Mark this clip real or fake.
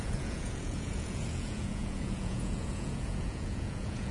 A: fake